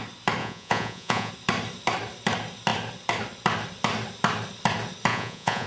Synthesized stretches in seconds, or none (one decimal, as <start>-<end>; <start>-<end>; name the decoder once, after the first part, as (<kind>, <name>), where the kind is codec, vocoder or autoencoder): 0.4-1.3 (vocoder, Vocos); 5.1-5.7